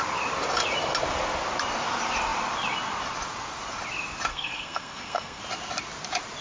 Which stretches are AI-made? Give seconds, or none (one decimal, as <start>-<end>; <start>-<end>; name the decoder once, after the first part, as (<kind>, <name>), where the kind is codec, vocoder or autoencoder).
4.3-5.4 (codec, SNAC)